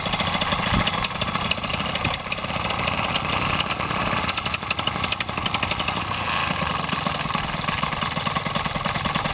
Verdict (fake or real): real